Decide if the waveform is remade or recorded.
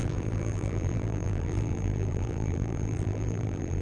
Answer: remade